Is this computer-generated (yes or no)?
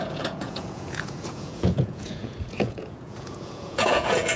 yes